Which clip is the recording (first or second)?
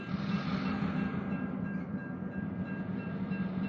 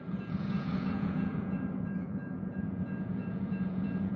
first